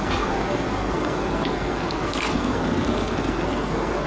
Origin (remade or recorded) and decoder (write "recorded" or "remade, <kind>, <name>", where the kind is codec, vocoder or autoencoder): remade, codec, SNAC